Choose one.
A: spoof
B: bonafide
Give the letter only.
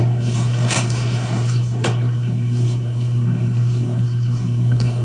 A